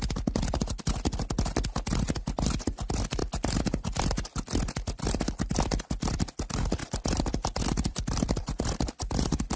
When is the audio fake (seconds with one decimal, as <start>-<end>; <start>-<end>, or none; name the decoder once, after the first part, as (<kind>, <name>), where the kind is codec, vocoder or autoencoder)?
6.8-9.6 (vocoder, BigVGAN v2)